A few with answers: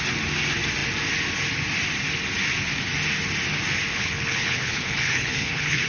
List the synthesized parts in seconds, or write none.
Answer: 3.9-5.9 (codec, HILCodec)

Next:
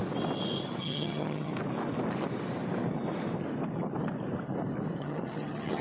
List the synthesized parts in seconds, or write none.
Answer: 0.8-1.5 (vocoder, HiFi-GAN); 5.0-5.8

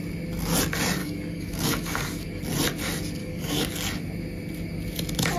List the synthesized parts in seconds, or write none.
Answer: 1.0-2.4 (codec, DAC); 3.2-3.7

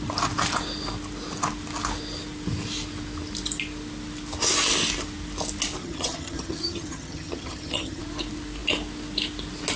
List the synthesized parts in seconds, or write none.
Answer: 5.8-8.0 (vocoder, HiFi-GAN)